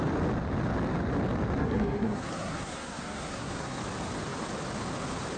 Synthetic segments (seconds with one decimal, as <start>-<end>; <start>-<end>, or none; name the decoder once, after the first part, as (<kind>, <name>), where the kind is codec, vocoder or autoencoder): 1.6-3.8 (codec, SNAC)